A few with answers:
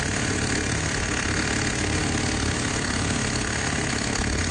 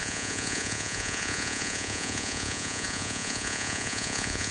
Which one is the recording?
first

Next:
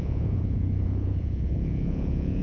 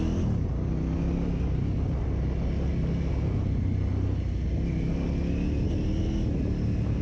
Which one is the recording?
second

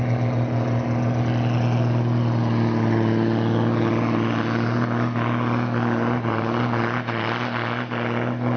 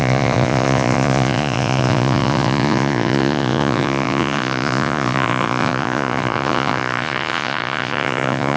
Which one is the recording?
first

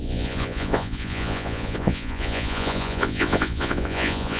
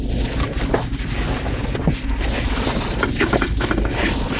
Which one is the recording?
second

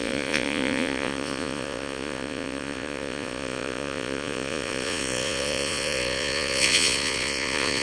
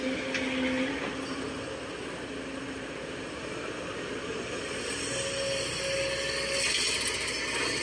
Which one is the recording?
second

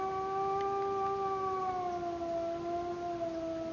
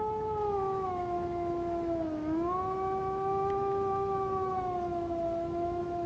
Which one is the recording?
first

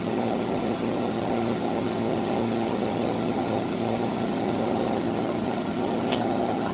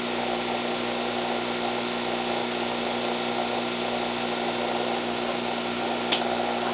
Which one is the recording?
second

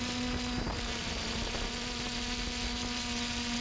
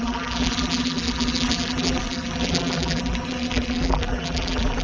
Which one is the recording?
first